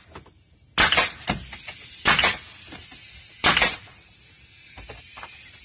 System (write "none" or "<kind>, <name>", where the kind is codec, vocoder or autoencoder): none